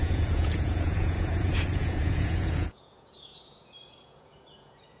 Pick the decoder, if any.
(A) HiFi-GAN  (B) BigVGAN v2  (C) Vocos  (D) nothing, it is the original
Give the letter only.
C